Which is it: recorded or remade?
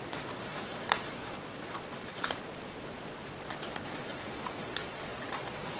remade